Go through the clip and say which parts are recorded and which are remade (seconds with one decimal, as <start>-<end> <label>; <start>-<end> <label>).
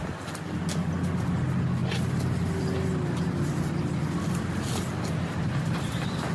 0.0-6.3 recorded